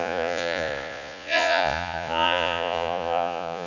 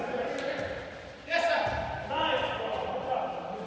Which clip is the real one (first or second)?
second